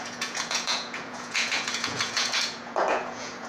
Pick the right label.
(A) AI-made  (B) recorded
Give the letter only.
A